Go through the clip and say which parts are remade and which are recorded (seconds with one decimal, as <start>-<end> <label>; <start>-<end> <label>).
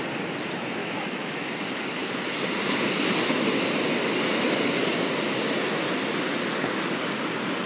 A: 0.0-0.8 recorded; 0.8-1.5 remade; 1.5-7.7 recorded